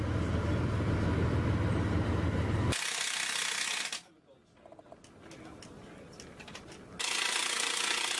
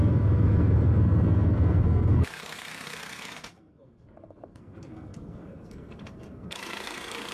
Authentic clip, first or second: first